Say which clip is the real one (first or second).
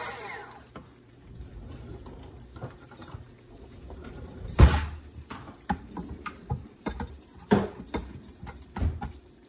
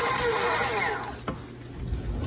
second